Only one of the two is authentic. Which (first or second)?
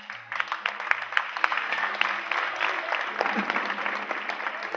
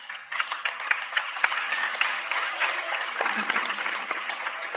first